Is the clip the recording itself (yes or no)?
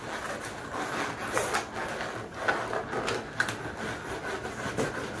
yes